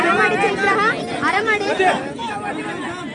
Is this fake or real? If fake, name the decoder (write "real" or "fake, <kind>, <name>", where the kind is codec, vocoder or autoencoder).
real